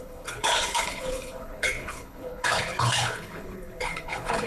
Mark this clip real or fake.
fake